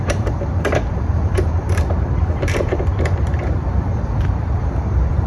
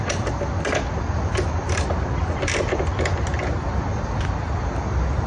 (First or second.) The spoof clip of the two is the first